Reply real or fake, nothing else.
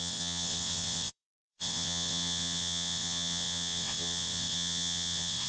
fake